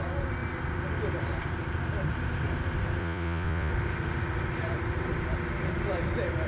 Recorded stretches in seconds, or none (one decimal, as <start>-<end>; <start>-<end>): 0.0-3.0; 3.7-6.5